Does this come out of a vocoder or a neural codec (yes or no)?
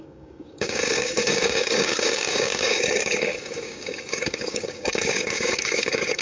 yes